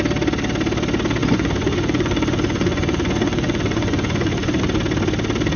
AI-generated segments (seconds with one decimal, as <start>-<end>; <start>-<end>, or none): 1.2-4.6